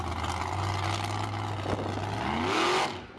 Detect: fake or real real